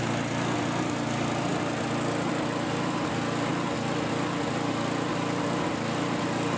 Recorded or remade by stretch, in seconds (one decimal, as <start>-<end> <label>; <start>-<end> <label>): 0.0-6.6 recorded